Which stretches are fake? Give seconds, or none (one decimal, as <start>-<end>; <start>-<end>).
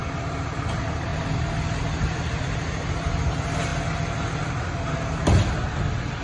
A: none